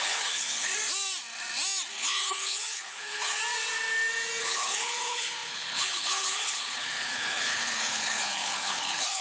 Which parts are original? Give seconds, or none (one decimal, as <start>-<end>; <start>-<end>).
0.7-1.9; 3.4-4.4